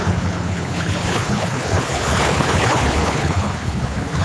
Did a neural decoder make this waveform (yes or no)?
yes